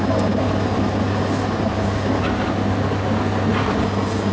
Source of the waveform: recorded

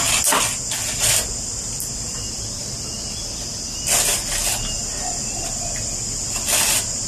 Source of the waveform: recorded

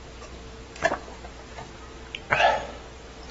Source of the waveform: recorded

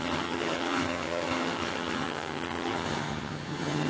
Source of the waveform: remade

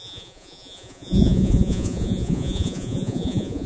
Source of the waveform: remade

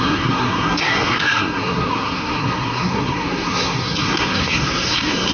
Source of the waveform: remade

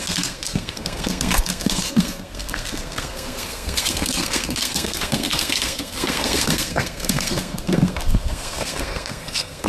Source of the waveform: remade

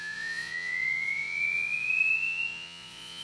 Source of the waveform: remade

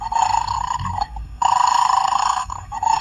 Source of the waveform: remade